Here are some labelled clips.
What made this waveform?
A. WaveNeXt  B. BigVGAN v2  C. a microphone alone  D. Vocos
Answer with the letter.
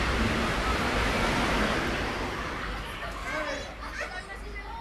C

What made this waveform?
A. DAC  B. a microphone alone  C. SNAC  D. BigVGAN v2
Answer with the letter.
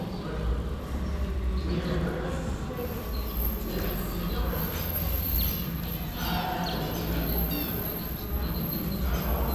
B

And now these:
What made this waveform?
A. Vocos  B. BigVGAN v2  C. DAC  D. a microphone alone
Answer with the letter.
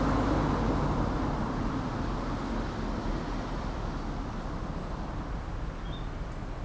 D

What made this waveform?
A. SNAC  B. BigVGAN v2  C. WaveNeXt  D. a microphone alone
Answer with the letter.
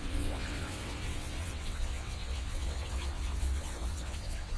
C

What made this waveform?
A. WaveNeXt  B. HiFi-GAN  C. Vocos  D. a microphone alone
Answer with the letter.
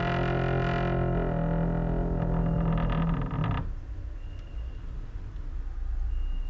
D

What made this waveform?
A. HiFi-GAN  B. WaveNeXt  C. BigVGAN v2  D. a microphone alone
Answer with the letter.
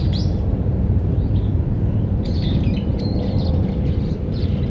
C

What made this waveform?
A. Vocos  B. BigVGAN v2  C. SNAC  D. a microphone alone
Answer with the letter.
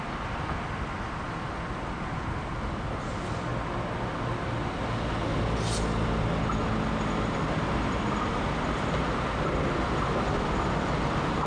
D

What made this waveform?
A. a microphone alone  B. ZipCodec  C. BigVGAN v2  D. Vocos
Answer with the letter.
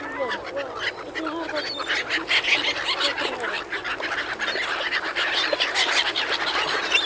A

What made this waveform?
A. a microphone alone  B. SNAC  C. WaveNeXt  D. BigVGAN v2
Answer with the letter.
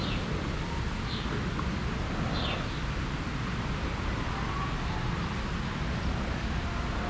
A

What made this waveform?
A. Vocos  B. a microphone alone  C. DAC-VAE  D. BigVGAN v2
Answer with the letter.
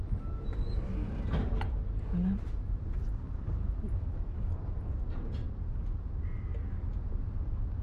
B